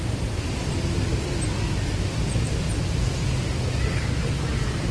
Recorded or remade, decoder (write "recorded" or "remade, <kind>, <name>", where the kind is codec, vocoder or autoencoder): recorded